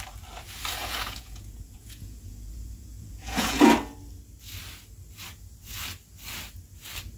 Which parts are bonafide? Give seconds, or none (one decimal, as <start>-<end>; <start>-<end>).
0.0-0.8; 3.7-7.2